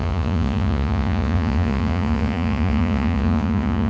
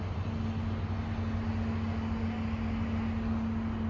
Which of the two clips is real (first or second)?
second